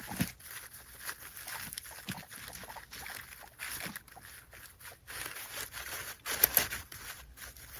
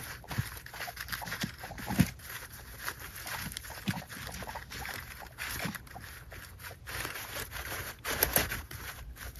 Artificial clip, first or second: second